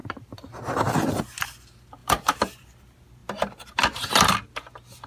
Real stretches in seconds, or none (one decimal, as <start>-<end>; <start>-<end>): 0.0-2.0; 2.5-5.1